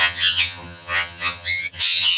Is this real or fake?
fake